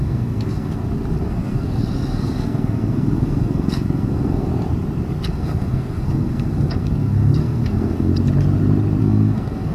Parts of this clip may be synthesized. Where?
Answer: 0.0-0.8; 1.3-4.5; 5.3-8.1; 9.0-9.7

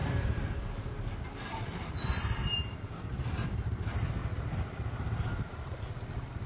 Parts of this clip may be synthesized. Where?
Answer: 0.0-2.8; 4.2-5.8